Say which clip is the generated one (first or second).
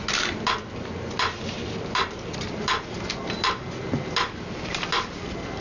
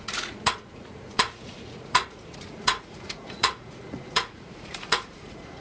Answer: second